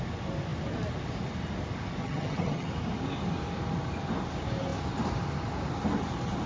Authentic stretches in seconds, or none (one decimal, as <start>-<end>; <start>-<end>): 0.0-2.0; 2.7-6.5